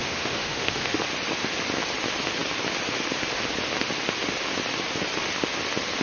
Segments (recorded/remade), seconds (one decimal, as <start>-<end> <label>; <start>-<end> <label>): 0.0-1.0 remade; 1.0-6.0 recorded